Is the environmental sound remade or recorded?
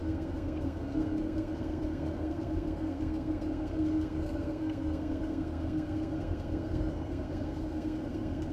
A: remade